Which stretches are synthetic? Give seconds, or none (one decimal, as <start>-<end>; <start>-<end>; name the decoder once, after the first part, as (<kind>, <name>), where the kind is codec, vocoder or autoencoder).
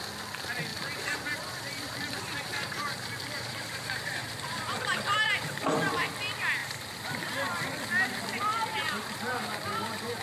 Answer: 0.7-4.7 (vocoder, BigVGAN v2); 6.6-7.2; 8.5-10.2